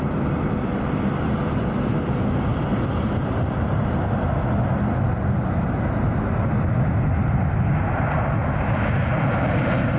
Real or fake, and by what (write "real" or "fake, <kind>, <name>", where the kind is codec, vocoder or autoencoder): real